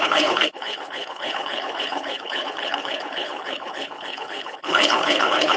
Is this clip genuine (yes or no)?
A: no